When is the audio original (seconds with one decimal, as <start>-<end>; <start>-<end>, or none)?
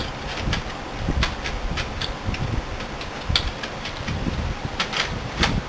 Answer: 0.0-3.4